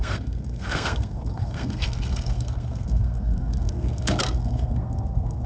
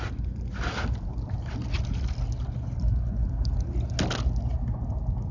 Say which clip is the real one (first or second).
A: second